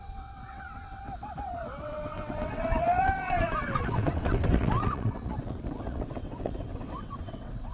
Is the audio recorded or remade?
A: remade